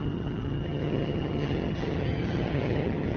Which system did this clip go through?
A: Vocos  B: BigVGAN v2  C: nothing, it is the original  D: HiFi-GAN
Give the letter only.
D